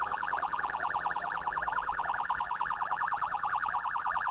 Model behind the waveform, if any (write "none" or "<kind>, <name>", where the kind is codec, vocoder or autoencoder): vocoder, BigVGAN v2